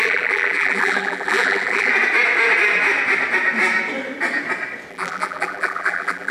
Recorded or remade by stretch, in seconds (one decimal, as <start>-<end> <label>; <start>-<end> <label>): 0.0-1.9 remade; 1.9-4.9 recorded; 4.9-6.3 remade